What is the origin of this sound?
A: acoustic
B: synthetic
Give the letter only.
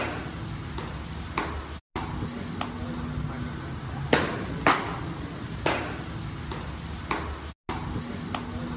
A